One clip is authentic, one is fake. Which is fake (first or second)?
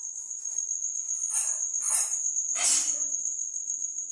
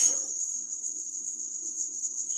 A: second